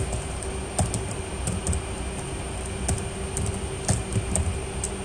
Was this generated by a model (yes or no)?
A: no